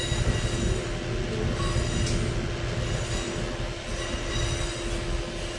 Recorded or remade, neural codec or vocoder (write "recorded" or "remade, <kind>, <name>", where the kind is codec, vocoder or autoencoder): recorded